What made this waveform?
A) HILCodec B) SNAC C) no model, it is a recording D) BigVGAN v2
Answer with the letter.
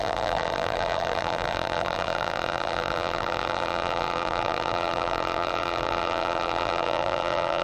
D